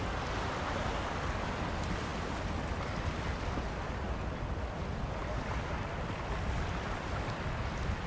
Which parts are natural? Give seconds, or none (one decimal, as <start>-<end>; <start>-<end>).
0.0-8.1